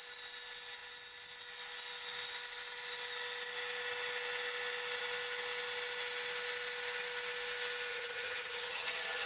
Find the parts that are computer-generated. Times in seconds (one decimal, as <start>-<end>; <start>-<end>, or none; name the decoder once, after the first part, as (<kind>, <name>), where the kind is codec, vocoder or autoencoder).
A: 7.9-9.3 (vocoder, HiFi-GAN)